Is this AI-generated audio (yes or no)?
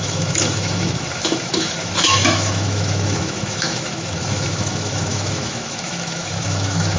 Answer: yes